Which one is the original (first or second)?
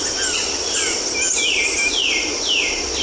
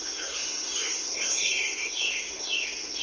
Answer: first